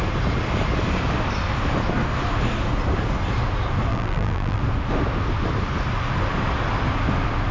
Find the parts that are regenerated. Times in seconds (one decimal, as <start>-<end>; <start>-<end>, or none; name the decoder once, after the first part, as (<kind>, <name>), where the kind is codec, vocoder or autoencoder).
3.9-4.6 (vocoder, BigVGAN v2)